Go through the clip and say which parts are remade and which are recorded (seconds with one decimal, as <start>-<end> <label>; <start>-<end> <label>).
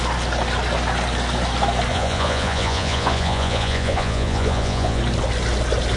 0.0-1.9 recorded; 1.9-5.0 remade; 5.0-6.0 recorded